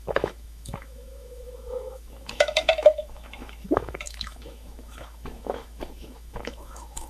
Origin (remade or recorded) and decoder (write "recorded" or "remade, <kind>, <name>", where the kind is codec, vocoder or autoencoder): remade, autoencoder, DAC-VAE